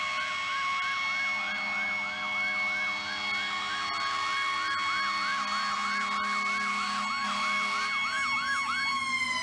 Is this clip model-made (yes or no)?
no